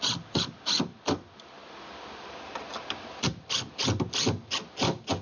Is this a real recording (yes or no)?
yes